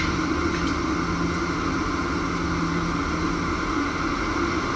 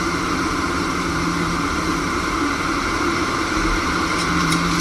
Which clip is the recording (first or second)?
first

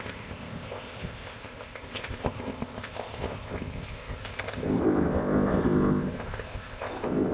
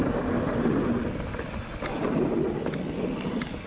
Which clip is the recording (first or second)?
second